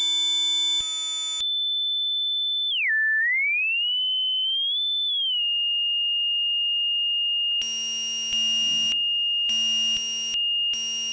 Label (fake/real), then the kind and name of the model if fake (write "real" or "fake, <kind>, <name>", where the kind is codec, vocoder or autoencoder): real